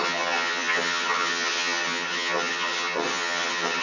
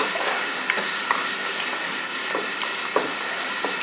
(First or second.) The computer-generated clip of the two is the first